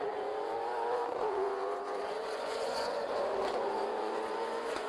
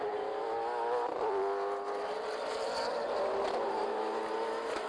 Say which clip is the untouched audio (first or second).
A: second